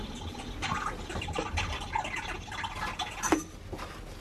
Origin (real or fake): real